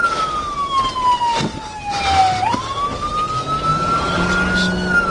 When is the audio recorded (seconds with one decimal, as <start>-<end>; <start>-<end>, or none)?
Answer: 0.0-1.5; 2.2-5.1